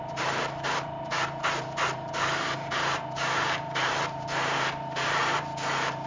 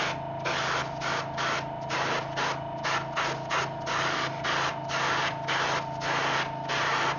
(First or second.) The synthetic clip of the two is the first